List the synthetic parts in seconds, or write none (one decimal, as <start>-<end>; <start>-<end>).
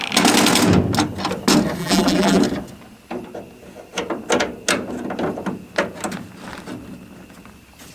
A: 1.8-2.4